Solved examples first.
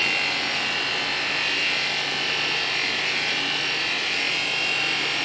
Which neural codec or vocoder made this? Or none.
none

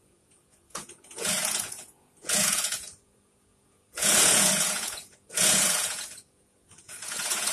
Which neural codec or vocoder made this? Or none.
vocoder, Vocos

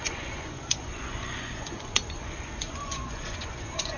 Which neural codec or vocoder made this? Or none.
vocoder, Vocos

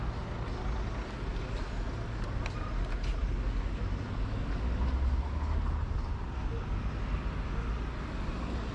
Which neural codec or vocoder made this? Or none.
none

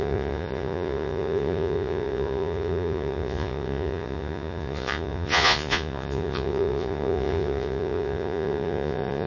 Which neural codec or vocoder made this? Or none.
vocoder, Vocos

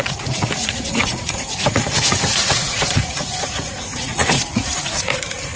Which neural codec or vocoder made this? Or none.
vocoder, Vocos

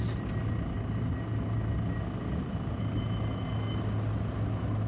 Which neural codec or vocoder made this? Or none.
none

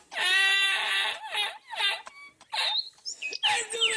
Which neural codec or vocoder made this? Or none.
none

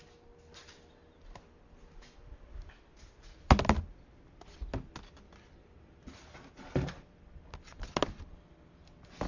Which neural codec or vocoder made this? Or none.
none